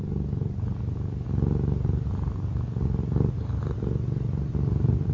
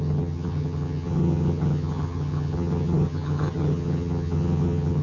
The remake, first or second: second